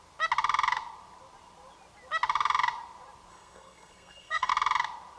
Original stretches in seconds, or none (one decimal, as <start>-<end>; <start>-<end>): 0.0-3.3; 4.5-5.2